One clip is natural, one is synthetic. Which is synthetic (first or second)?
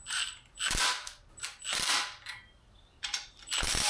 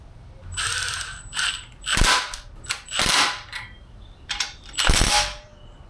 second